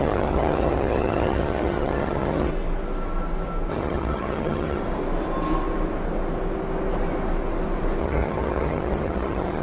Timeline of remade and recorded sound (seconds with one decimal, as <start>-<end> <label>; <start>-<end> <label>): 0.0-2.5 remade; 2.5-3.7 recorded; 3.7-4.8 remade; 4.8-8.0 recorded; 8.0-9.6 remade